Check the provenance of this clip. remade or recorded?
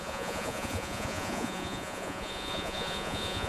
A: remade